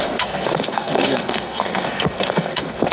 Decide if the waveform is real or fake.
fake